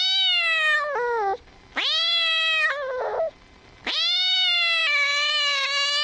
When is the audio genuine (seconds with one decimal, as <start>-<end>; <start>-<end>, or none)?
0.0-6.0